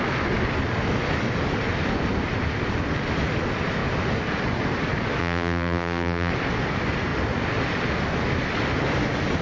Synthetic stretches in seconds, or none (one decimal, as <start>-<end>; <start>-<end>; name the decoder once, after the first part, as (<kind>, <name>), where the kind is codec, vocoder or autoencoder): 5.2-6.3 (vocoder, BigVGAN v2)